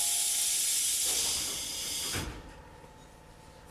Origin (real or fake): real